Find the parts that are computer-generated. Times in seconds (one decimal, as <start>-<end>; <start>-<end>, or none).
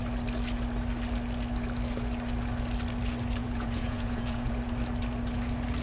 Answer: 3.4-4.5